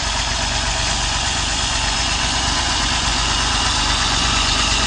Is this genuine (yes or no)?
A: no